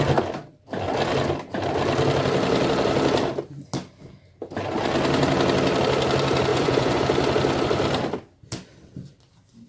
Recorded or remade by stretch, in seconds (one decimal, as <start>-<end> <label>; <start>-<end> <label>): 0.0-6.5 recorded; 6.5-7.0 remade; 7.0-9.7 recorded

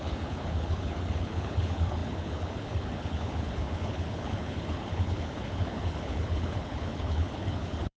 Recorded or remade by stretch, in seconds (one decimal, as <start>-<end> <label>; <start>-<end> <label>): 0.0-8.0 remade

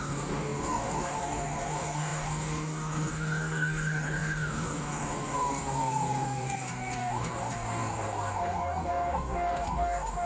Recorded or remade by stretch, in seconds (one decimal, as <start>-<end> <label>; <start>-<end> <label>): 0.0-10.3 remade

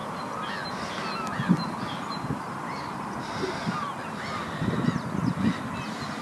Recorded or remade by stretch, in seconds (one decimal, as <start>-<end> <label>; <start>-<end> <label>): 0.0-6.2 recorded

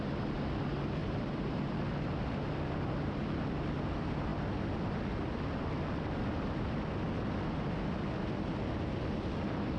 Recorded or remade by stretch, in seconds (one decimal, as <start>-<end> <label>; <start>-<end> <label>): 0.0-1.0 recorded; 1.0-1.8 remade; 1.8-9.8 recorded

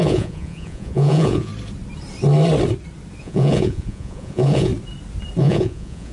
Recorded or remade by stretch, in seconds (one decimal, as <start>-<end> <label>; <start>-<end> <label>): 0.0-1.5 remade; 1.5-3.2 recorded; 3.2-4.7 remade; 4.7-5.4 recorded; 5.4-6.1 remade

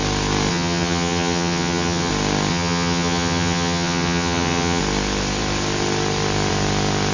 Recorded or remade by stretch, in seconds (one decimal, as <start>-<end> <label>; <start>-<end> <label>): 0.0-0.5 recorded; 0.5-2.1 remade; 2.1-2.5 recorded; 2.5-4.8 remade; 4.8-7.1 recorded

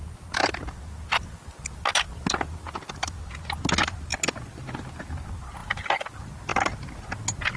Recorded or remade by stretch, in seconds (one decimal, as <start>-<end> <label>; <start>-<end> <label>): 0.0-7.6 recorded